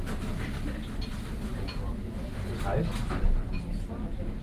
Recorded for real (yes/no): yes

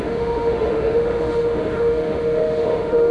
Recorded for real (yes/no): no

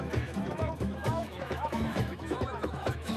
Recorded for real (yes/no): no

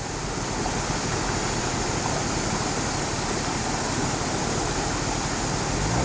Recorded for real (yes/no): yes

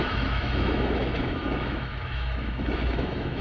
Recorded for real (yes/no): no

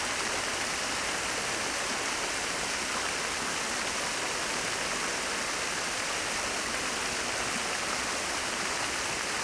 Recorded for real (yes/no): yes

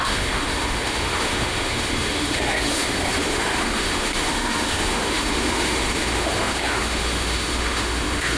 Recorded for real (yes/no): no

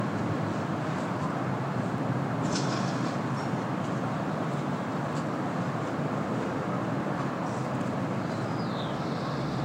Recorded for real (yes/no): yes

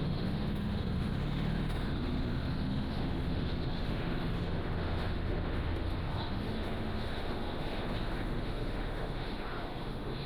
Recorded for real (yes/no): no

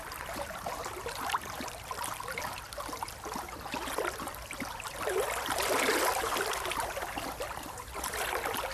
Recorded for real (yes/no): yes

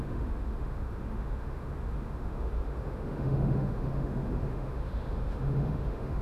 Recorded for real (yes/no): no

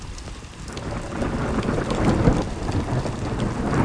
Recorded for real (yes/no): yes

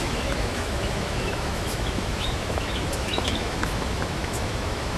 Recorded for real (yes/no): no